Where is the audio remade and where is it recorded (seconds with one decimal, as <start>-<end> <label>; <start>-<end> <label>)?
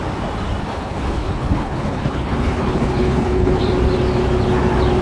0.0-0.6 recorded; 0.6-3.6 remade; 3.6-5.0 recorded